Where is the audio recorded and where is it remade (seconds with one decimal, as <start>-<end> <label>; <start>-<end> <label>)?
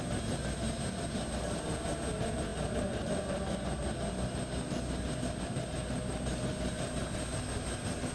0.0-8.1 recorded